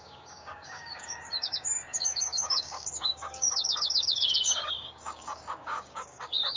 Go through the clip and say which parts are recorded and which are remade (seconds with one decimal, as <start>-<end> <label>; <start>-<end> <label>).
0.0-6.6 remade